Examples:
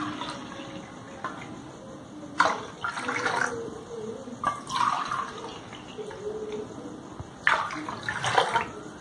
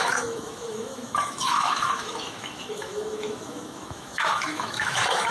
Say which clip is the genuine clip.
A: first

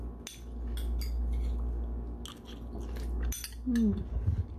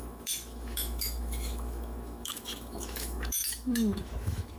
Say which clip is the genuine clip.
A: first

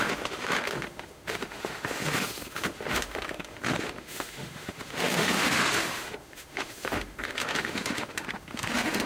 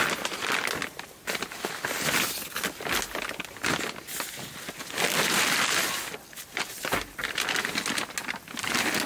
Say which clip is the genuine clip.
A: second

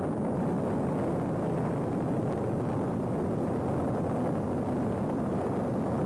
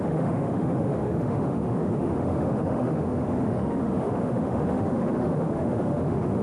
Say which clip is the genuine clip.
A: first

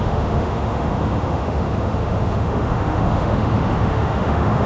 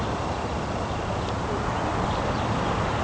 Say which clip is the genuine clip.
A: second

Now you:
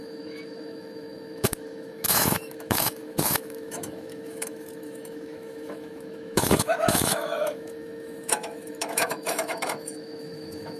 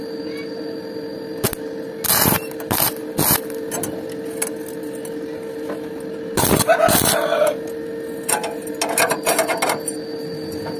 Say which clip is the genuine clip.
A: second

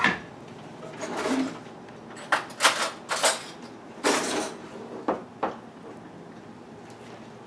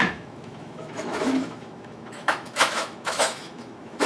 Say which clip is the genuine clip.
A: first